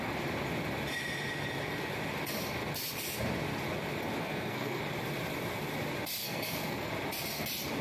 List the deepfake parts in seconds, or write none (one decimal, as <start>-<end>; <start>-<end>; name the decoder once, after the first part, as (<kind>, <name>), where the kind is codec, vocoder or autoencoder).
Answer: 4.2-4.8 (codec, SNAC); 6.2-6.9